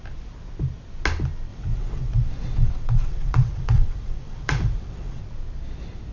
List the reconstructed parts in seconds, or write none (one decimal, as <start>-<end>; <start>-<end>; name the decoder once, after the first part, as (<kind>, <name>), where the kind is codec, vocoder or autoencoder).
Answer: 1.5-5.2 (vocoder, WaveNeXt)